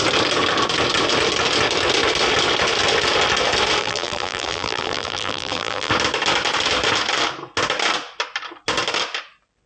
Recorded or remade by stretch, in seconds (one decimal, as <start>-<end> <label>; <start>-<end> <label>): 0.0-3.8 recorded; 3.8-5.9 remade; 5.9-9.7 recorded